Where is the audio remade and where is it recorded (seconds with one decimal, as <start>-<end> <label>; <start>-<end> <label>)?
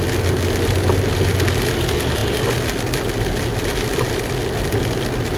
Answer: 0.0-5.4 recorded